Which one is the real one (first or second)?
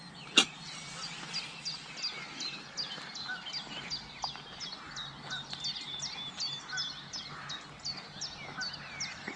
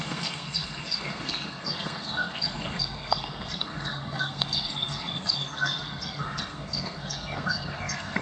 first